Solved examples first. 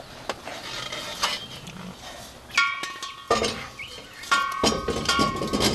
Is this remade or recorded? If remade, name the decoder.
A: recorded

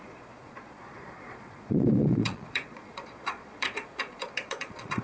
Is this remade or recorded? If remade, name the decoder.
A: remade, vocoder, Vocos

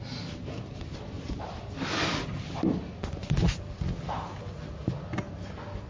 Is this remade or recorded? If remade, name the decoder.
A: recorded